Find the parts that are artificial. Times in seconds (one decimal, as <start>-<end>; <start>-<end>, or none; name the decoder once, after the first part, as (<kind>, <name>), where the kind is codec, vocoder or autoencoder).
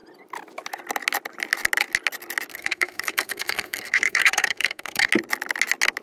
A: 2.5-5.1 (codec, SNAC)